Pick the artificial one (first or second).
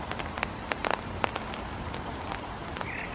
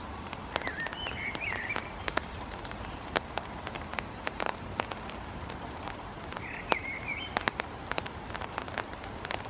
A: second